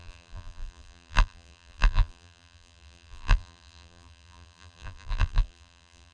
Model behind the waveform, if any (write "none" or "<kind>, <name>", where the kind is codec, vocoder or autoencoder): vocoder, BigVGAN v2